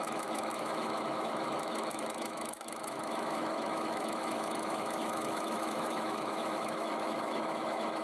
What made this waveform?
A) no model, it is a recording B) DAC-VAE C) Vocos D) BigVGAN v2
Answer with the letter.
B